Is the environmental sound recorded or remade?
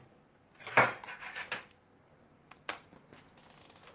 recorded